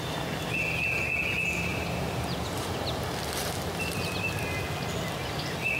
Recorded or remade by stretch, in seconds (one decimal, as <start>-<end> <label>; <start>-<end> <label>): 0.0-5.8 recorded